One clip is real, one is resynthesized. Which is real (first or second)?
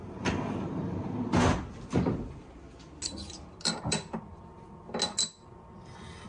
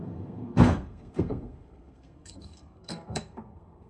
first